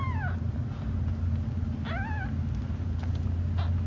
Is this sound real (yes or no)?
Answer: yes